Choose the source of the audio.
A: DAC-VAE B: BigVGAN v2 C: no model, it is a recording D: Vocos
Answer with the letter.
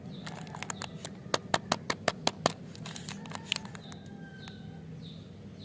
C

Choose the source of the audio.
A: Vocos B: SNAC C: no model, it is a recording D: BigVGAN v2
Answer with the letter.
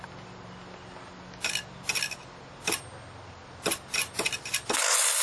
C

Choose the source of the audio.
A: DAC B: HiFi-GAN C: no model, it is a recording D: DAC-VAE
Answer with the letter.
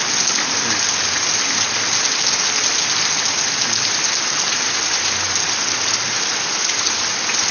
C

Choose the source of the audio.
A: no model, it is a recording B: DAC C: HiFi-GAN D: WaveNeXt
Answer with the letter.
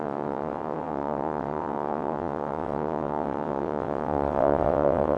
D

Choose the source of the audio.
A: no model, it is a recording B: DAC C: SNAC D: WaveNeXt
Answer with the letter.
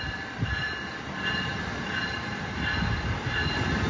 A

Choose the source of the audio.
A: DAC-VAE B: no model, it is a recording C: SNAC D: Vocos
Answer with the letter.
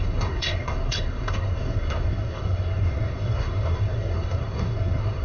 C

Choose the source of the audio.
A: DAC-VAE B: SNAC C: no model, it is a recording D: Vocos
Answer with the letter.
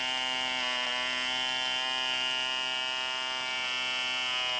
C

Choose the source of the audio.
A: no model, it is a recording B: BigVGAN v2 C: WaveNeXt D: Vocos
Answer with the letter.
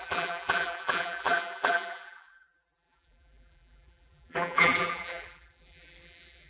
B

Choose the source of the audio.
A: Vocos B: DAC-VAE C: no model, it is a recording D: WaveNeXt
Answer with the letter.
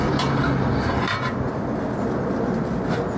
C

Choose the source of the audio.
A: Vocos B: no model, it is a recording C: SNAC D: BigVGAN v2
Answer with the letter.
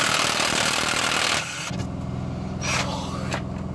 B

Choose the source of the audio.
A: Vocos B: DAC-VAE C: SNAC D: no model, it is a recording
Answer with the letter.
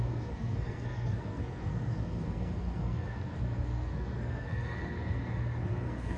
C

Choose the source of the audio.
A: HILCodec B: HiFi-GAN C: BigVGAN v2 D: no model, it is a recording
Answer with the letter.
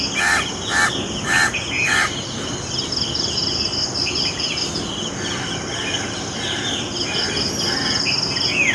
D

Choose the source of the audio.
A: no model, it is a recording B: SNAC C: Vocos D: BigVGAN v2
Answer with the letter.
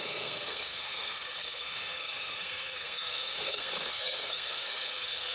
B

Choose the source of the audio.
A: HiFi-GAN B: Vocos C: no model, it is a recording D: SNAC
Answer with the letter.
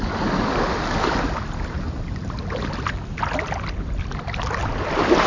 C